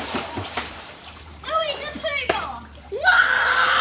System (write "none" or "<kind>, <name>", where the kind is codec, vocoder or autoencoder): vocoder, BigVGAN v2